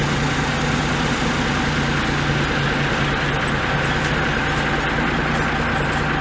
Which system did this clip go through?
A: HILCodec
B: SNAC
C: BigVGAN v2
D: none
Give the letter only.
D